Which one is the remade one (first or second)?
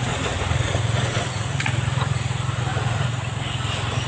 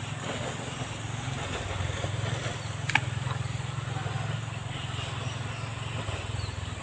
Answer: first